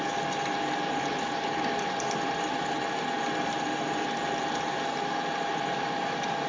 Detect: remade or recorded recorded